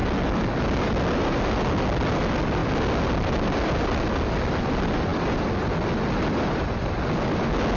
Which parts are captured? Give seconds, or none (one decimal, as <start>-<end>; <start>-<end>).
0.0-7.8